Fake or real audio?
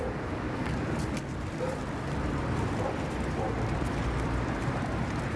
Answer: real